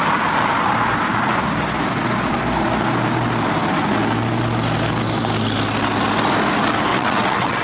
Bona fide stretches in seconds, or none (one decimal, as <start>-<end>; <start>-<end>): 0.0-6.9